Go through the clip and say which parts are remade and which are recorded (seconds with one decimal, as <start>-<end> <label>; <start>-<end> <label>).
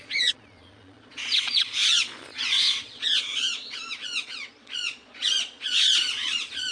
0.0-6.7 remade